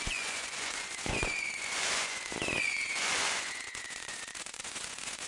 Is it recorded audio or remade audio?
remade